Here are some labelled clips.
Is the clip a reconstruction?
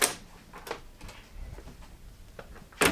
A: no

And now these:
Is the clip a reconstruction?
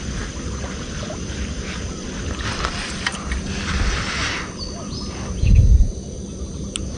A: no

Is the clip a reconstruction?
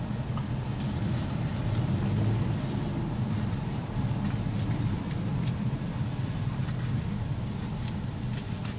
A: no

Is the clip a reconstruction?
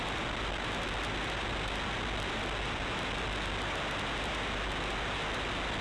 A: no